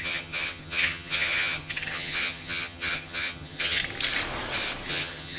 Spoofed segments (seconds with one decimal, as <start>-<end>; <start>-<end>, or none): 0.0-3.8; 4.9-5.4

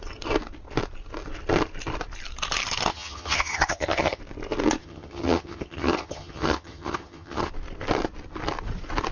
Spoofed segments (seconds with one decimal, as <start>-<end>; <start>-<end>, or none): 2.9-4.2; 4.8-7.5